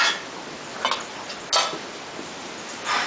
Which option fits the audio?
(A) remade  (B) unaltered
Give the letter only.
B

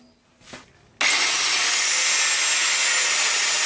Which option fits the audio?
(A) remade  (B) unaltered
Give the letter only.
B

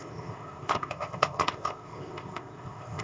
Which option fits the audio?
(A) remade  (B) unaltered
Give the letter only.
A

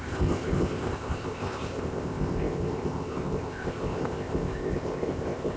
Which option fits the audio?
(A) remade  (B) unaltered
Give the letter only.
A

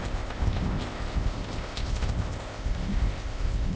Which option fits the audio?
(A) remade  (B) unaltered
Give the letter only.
A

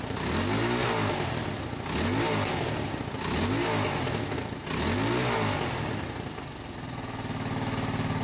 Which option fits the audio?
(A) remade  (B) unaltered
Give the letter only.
B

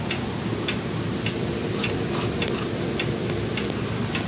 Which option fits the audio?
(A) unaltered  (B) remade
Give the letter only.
A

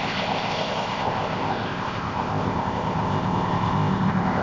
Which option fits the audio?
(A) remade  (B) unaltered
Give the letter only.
A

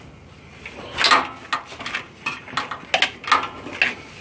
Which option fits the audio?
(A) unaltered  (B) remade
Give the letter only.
A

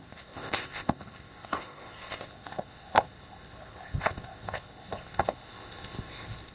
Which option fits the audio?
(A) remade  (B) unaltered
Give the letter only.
A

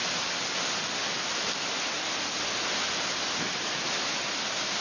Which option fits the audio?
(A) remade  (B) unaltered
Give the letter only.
B